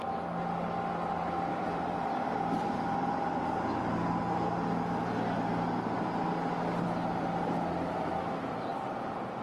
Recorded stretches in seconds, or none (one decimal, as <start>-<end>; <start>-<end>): 0.0-1.5; 3.1-8.7